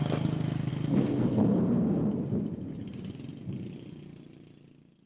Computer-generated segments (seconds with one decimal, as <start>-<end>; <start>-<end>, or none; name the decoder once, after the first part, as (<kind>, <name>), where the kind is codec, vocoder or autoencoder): 0.0-2.0 (codec, SNAC)